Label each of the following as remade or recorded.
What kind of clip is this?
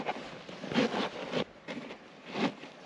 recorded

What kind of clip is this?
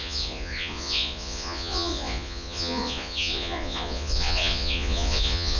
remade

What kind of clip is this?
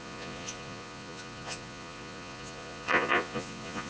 remade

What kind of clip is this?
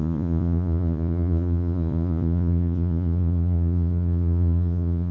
remade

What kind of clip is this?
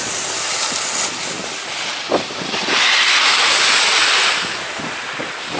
recorded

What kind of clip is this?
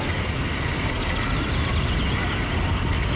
recorded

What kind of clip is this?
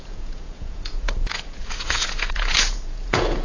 remade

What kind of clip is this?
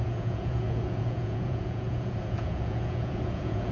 remade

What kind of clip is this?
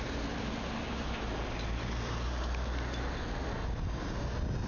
recorded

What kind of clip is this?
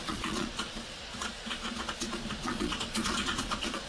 remade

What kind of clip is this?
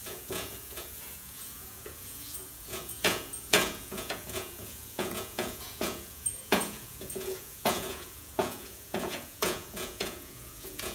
remade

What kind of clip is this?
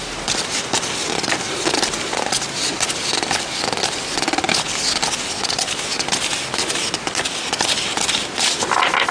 recorded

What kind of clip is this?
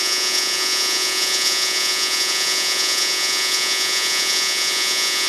remade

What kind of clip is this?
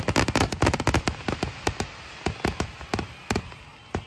recorded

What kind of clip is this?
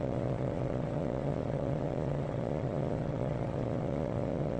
remade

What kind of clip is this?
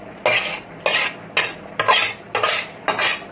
recorded